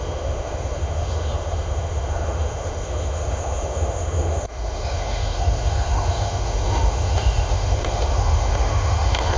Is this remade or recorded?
remade